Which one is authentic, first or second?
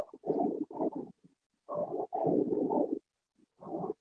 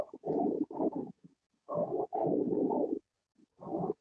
first